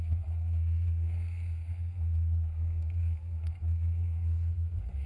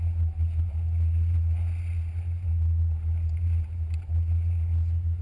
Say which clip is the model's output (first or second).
first